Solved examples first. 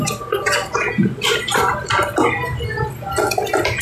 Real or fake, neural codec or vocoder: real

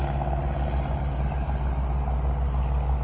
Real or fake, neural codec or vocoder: real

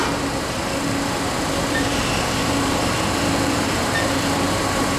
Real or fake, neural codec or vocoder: fake, vocoder, BigVGAN v2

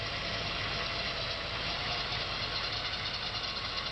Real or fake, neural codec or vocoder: real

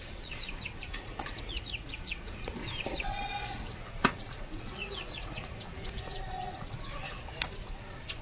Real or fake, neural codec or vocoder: fake, vocoder, Vocos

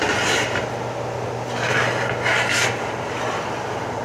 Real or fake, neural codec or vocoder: real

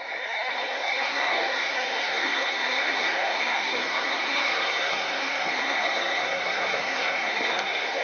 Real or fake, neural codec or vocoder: fake, codec, SNAC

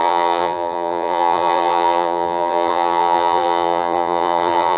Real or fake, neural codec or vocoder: fake, vocoder, BigVGAN v2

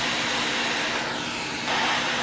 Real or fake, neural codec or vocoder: real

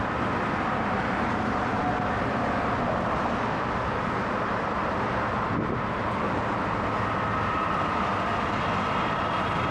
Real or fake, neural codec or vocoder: real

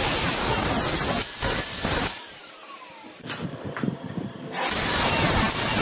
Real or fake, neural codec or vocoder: real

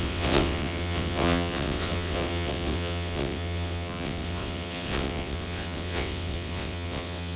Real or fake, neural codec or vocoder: fake, vocoder, WaveNeXt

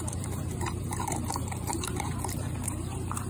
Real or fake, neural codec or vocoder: fake, vocoder, BigVGAN v2